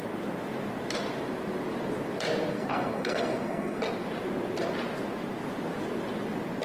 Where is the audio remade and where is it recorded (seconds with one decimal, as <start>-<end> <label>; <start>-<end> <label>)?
0.0-2.5 recorded; 2.5-3.8 remade; 3.8-6.6 recorded